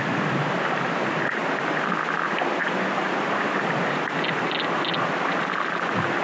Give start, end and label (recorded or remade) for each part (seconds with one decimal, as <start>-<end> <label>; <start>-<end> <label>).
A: 0.0-6.2 recorded